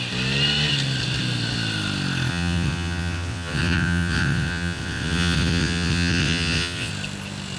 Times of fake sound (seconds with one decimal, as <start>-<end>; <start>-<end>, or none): 2.3-6.9